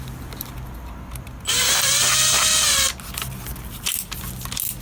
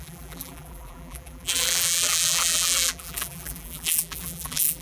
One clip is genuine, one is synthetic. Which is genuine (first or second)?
first